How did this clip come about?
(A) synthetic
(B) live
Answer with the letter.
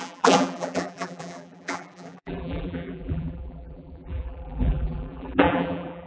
A